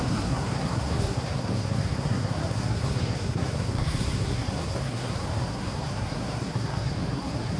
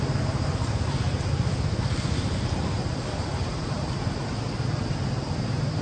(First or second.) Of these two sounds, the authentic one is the second